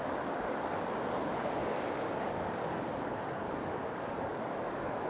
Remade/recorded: remade